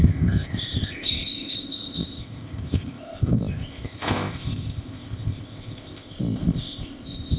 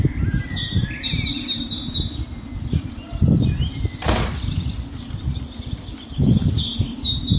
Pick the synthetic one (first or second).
first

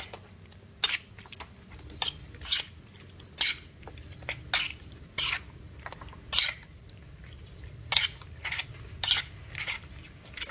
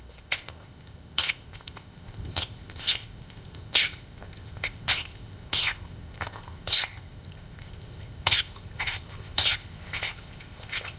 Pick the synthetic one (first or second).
second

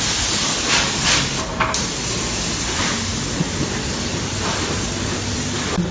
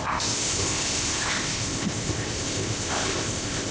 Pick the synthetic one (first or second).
second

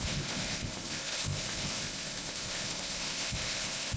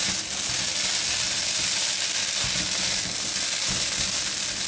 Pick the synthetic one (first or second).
first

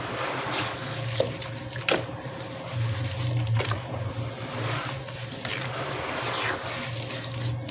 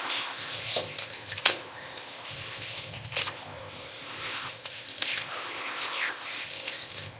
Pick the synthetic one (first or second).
second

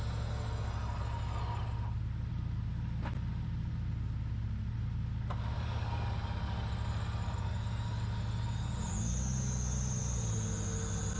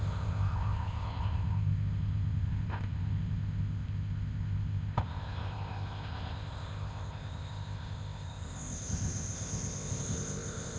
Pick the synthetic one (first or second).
second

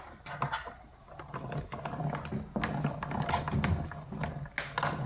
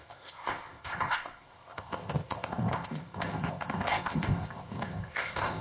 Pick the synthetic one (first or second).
second